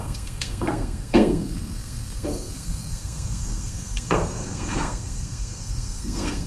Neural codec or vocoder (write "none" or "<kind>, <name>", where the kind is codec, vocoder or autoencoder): codec, SNAC